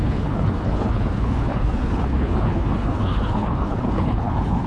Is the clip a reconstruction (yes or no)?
yes